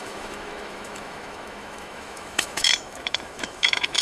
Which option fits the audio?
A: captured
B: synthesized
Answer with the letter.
B